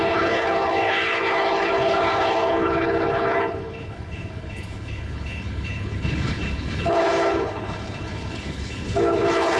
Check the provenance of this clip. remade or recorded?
remade